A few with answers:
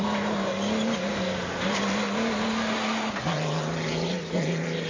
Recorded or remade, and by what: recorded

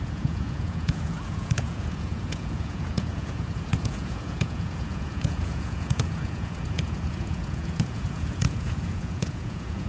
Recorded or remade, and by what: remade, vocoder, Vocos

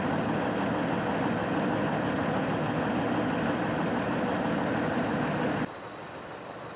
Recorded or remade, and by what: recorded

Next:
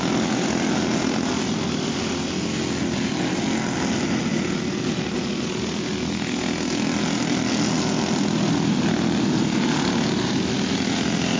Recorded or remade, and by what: recorded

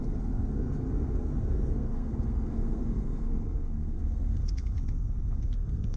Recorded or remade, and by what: remade, codec, SNAC